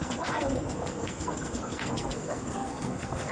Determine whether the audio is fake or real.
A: fake